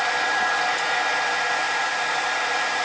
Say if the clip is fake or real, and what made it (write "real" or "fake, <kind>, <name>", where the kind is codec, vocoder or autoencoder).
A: real